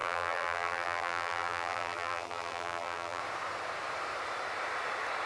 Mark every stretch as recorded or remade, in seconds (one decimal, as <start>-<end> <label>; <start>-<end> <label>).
0.0-3.2 remade; 3.2-5.3 recorded